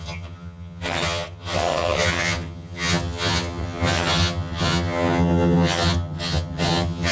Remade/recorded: remade